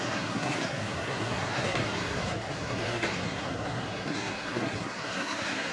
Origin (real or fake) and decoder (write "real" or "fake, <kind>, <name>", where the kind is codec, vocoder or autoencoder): fake, codec, SNAC